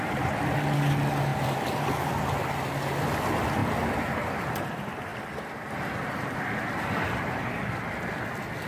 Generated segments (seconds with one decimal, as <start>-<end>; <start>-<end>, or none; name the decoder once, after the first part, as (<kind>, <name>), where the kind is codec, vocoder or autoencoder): 1.3-2.1 (vocoder, BigVGAN v2); 3.6-4.4; 5.1-7.8